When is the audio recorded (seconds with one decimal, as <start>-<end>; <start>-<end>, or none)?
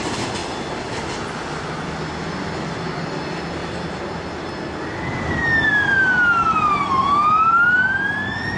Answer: 0.0-8.6